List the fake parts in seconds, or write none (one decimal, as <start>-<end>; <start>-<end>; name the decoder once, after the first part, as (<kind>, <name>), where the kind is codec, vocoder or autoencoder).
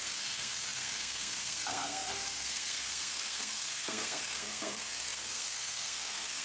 0.0-6.4 (codec, SNAC)